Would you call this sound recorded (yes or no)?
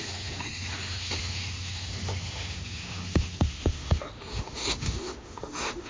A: no